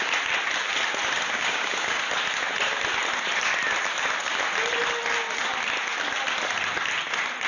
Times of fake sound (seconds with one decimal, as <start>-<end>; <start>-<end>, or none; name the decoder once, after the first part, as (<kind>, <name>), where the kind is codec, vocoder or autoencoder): 1.3-2.0 (codec, DAC)